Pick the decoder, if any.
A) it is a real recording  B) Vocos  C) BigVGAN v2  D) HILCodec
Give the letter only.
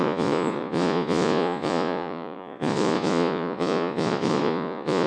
B